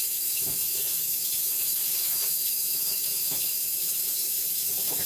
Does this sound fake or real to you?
fake